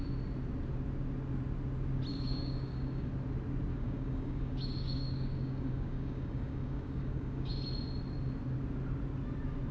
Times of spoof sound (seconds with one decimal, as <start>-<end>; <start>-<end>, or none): 2.1-3.1; 3.7-7.6